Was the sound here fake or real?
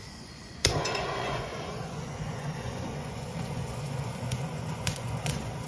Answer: fake